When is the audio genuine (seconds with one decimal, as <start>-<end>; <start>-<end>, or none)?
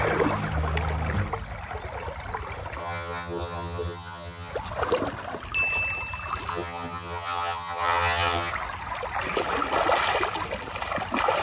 0.0-2.8; 4.5-6.5; 8.5-11.4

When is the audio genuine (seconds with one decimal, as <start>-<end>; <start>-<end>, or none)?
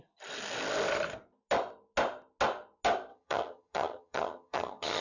0.0-3.1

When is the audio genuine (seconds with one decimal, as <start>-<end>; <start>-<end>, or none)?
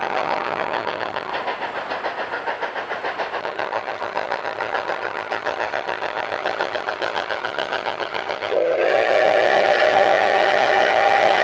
1.3-3.4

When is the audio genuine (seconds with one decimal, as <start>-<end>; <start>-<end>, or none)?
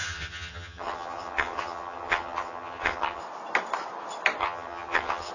3.2-4.4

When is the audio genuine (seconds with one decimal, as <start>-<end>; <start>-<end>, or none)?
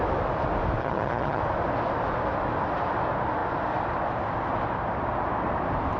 0.0-0.8; 1.4-6.0